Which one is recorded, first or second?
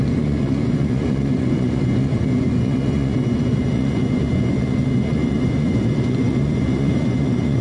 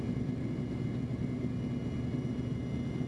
second